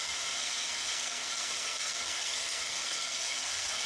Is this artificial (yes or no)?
yes